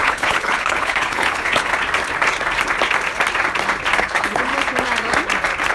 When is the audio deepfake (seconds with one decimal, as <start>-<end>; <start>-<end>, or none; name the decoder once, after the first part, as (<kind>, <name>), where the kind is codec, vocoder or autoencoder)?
0.0-1.7 (codec, HILCodec); 4.0-4.5